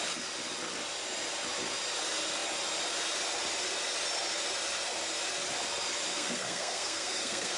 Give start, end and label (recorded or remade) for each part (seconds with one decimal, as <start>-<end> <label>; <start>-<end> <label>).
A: 0.0-6.1 recorded; 6.1-7.6 remade